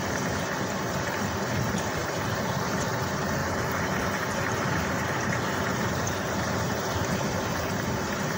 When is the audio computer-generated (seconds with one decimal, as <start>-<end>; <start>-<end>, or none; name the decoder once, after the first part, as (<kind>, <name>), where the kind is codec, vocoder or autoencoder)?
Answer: 2.0-2.8 (vocoder, BigVGAN v2); 3.4-8.4